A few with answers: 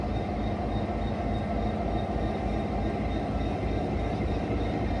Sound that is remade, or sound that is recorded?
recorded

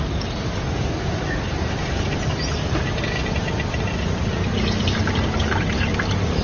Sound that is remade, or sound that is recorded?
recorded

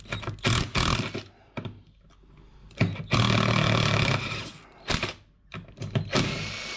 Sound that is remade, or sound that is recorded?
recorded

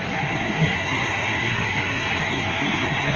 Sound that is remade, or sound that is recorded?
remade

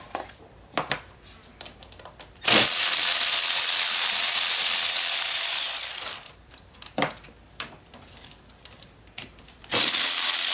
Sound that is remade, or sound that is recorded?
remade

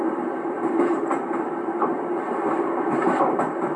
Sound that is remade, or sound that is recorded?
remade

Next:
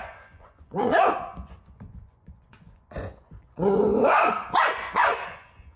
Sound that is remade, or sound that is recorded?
remade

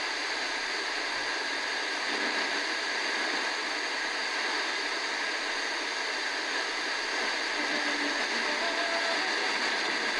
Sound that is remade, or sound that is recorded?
recorded